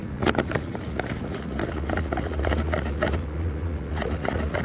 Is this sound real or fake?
fake